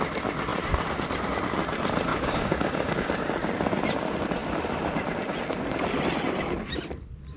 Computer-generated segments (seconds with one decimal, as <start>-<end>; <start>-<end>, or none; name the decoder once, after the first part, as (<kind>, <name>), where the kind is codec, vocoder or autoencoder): 2.1-3.1 (codec, DAC)